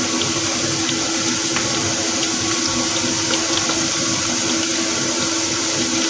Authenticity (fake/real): real